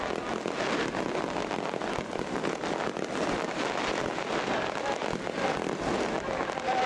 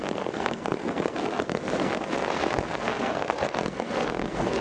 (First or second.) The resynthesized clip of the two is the second